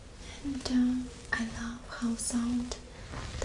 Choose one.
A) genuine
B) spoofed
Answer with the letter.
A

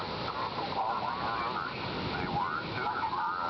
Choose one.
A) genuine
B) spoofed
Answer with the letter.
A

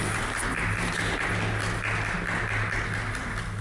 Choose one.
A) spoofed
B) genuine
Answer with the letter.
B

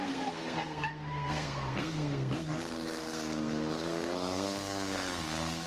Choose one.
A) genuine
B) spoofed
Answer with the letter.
B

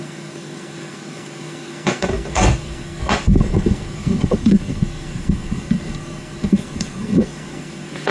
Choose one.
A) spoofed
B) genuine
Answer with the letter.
A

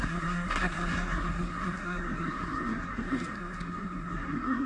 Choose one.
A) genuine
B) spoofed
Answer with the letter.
B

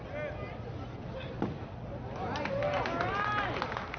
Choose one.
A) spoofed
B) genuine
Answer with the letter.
B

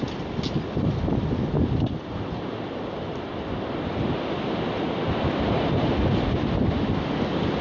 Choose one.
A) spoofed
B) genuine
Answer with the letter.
B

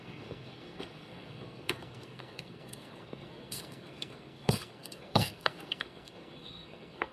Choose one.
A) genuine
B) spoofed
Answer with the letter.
B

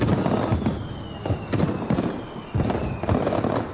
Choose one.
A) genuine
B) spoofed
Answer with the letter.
A